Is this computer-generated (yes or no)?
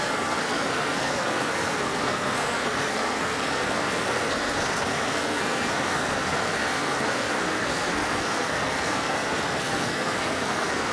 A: yes